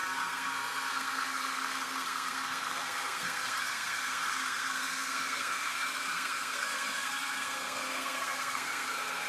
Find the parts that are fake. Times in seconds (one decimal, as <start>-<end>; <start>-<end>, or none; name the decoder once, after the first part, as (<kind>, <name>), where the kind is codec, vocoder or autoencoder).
0.0-9.3 (codec, SNAC)

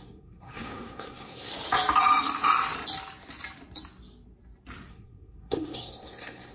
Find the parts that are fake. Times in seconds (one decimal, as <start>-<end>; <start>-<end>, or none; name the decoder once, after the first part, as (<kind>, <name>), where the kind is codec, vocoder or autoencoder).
0.0-1.5 (codec, SNAC); 4.9-6.5

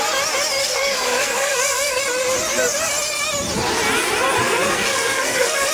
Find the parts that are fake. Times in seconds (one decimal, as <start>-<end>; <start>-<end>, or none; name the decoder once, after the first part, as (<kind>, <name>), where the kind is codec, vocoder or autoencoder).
0.6-2.0 (codec, SNAC); 4.4-5.7

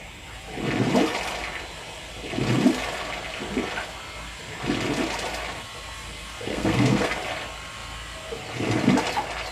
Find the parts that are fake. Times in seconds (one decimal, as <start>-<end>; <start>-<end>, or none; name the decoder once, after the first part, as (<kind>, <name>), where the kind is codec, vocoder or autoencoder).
6.5-7.1 (codec, SNAC)

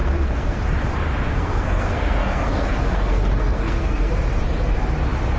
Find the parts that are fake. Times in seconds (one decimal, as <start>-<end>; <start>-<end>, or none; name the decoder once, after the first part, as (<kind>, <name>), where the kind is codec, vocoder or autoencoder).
0.0-0.6 (codec, SNAC); 1.3-4.1